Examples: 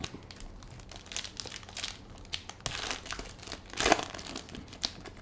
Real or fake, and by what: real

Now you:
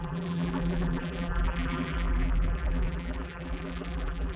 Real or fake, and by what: fake, vocoder, BigVGAN v2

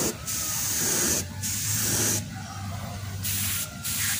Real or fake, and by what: real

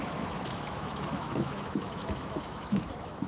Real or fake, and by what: fake, autoencoder, DAC-VAE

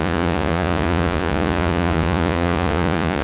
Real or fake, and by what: fake, vocoder, Vocos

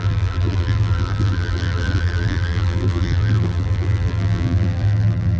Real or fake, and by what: fake, vocoder, BigVGAN v2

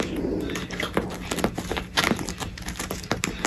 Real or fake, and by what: real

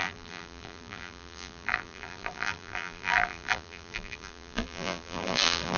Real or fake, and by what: fake, vocoder, BigVGAN v2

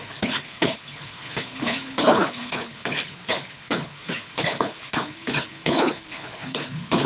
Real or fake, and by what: fake, codec, HILCodec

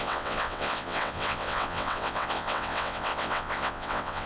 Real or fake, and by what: fake, vocoder, WaveNeXt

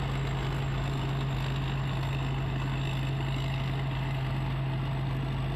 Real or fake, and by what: real